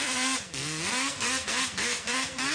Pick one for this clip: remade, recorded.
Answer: remade